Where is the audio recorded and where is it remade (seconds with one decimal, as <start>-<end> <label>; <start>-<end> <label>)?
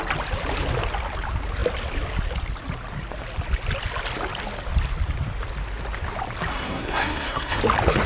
0.0-6.5 recorded; 6.5-7.6 remade; 7.6-8.1 recorded